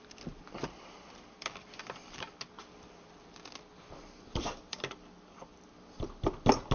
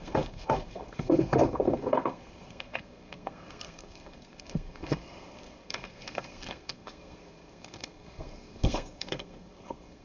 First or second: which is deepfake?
second